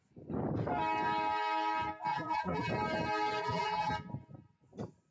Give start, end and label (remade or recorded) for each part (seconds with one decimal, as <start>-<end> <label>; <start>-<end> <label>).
0.0-2.1 recorded; 2.1-2.7 remade; 2.7-3.4 recorded; 3.4-3.9 remade; 3.9-5.1 recorded

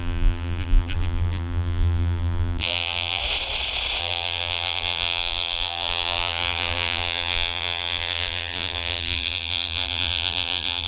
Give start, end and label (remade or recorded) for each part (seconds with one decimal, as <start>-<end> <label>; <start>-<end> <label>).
0.0-3.2 remade; 3.2-4.0 recorded; 4.0-10.9 remade

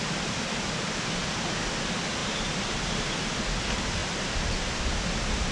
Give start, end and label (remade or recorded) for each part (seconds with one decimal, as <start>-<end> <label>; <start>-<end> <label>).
0.0-2.2 recorded; 2.2-3.1 remade; 3.1-4.0 recorded; 4.0-4.8 remade; 4.8-5.5 recorded

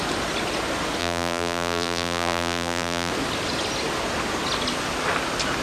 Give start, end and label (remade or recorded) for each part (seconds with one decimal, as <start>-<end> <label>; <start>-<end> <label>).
0.0-1.0 recorded; 1.0-3.1 remade; 3.1-5.6 recorded

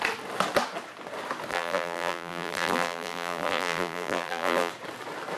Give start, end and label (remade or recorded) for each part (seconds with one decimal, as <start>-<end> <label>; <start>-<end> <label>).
0.0-1.5 recorded; 1.5-4.7 remade; 4.7-5.4 recorded

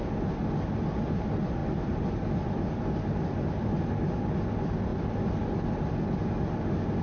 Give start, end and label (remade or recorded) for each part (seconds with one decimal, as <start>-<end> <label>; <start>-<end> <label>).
0.0-1.6 recorded; 1.6-3.4 remade; 3.4-7.0 recorded

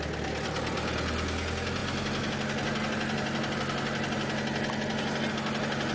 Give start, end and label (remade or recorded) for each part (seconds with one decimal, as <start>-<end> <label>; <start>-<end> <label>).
0.0-5.9 recorded

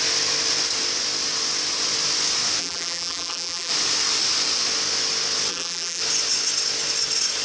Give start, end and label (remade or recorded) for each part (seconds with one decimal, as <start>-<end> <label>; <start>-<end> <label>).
0.0-2.6 recorded; 2.6-3.7 remade; 3.7-5.5 recorded; 5.5-6.0 remade; 6.0-7.4 recorded